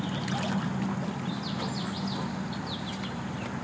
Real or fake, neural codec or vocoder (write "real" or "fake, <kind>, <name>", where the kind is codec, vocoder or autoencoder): real